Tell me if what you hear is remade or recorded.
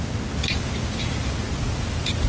recorded